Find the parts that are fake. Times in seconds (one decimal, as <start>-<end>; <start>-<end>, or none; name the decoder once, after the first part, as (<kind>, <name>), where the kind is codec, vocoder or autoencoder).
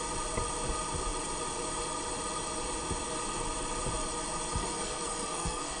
4.6-5.8 (codec, SNAC)